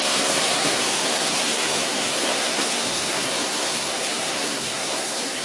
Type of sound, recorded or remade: remade